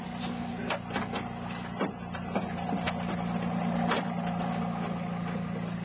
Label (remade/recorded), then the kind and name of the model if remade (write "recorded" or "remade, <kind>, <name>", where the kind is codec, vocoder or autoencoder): recorded